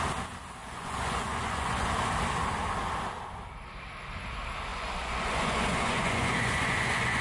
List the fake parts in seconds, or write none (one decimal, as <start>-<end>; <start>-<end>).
0.6-1.9; 4.7-7.2